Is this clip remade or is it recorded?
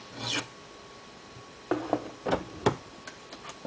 recorded